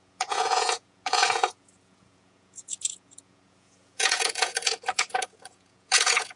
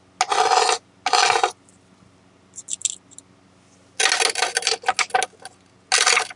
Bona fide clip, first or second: second